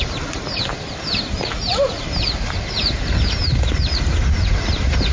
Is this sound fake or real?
real